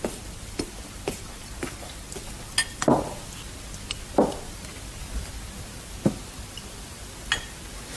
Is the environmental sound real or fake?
real